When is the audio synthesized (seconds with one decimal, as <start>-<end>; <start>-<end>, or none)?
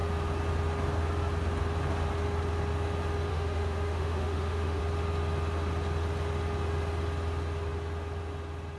3.3-4.8